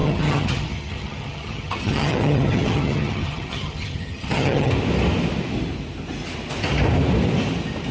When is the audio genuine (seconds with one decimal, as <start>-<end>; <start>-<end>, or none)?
4.7-7.9